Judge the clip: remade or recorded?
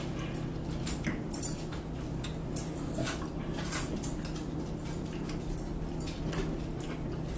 recorded